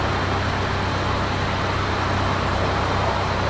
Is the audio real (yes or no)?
yes